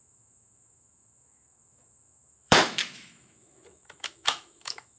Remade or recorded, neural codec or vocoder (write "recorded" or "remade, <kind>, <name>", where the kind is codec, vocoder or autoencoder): remade, autoencoder, DAC-VAE